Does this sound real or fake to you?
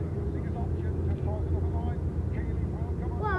real